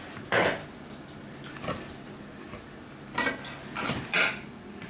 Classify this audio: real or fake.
real